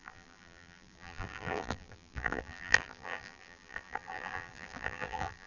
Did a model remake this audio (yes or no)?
yes